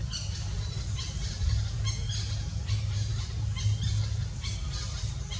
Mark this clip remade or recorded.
recorded